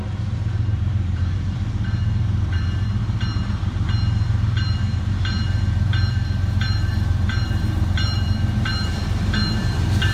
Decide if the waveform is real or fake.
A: fake